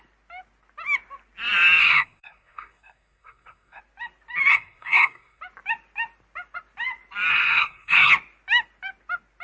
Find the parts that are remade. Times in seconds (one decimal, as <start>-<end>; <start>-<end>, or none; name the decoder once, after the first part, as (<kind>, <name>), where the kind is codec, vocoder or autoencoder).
1.8-3.8 (codec, SNAC); 4.5-5.4; 7.3-8.1